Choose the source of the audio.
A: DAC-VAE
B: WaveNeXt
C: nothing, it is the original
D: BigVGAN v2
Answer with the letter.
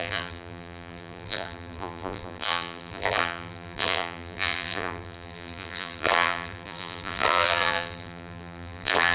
D